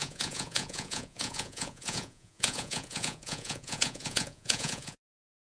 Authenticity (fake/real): fake